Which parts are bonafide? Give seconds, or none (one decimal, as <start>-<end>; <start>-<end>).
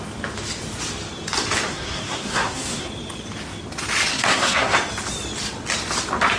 0.0-1.7; 2.9-4.1; 4.7-6.4